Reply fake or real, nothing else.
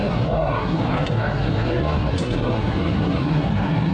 fake